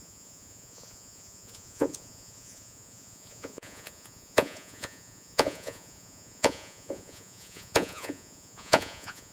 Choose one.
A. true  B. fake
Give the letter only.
B